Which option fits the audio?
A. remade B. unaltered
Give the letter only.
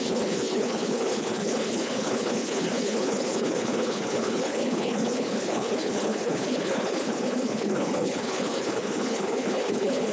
A